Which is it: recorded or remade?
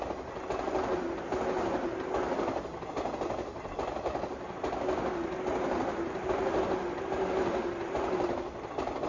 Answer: recorded